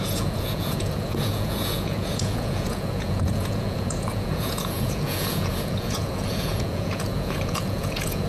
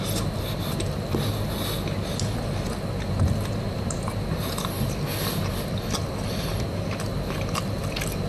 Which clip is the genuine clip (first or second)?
second